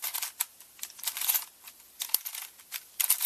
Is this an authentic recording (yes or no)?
yes